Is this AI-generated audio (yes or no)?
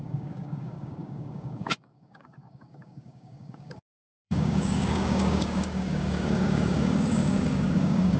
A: yes